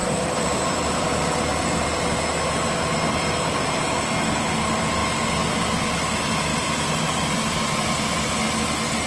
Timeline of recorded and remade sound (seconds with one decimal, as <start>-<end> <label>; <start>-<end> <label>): 0.0-1.0 remade; 1.0-6.5 recorded; 6.5-8.3 remade; 8.3-9.1 recorded